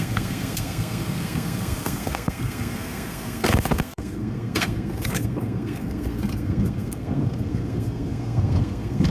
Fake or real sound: fake